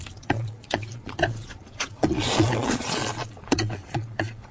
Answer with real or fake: fake